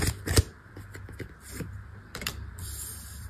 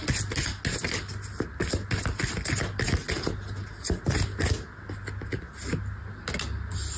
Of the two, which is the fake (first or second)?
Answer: first